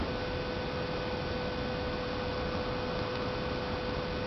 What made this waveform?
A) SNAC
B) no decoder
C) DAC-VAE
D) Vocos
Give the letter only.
B